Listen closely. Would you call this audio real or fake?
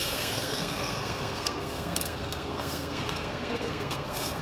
fake